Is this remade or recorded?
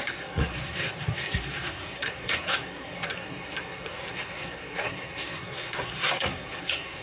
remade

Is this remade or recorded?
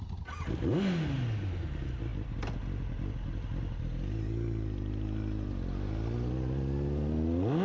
recorded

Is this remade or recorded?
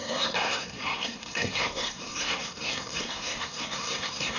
remade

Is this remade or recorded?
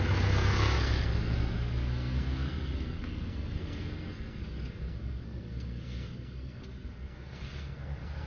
remade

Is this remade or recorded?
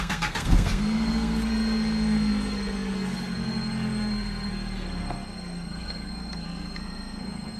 remade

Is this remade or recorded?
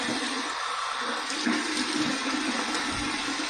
recorded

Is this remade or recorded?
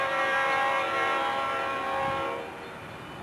recorded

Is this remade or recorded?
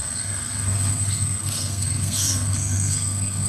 remade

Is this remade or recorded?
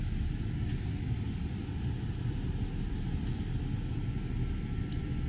recorded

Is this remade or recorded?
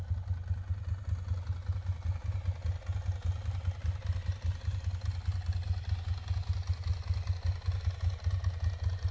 recorded